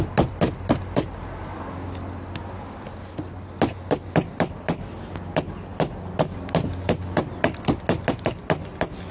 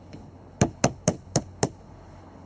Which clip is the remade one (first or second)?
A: second